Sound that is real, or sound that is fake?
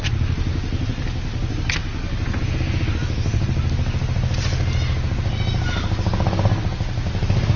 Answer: real